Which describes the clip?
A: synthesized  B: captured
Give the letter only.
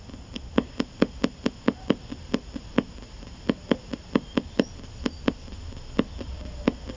B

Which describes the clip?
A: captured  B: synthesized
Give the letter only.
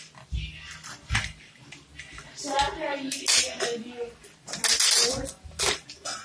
A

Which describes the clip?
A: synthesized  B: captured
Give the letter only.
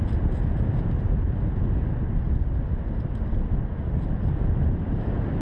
B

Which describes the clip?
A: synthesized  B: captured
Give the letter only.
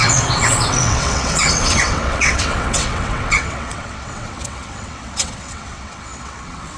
A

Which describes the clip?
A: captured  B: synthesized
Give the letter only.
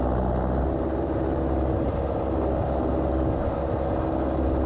A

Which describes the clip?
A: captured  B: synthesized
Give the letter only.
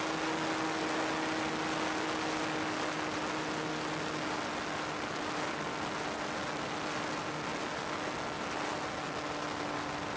A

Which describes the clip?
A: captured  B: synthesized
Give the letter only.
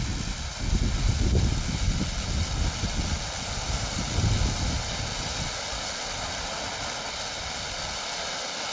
A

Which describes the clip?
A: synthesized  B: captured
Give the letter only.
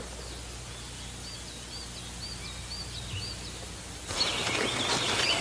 B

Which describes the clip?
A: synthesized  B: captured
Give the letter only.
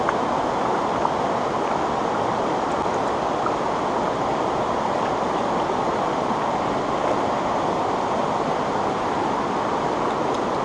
B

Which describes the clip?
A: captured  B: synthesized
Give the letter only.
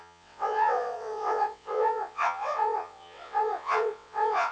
B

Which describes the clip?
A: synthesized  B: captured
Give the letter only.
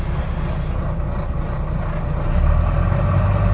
B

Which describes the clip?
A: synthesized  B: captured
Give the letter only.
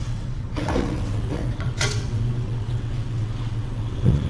A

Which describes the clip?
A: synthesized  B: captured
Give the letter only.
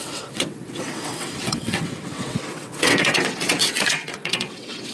A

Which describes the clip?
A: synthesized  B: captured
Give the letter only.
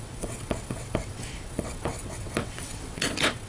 A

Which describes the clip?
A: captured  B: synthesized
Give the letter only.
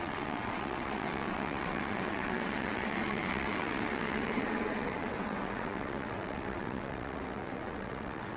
B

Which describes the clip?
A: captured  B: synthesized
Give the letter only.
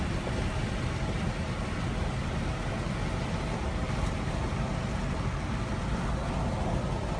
A